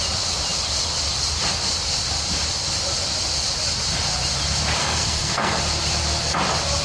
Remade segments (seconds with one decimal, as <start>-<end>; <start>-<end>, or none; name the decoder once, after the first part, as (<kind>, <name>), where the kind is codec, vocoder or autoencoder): 4.8-5.6 (codec, SNAC)